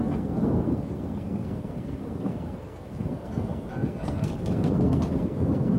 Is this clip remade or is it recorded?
remade